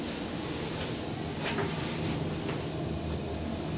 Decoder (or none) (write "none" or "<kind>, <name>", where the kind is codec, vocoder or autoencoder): none